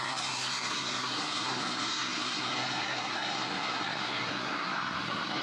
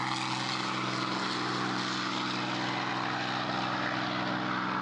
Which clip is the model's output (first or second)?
first